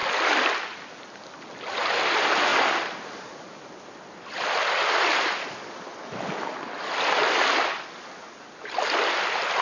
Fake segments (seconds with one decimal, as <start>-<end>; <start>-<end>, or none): none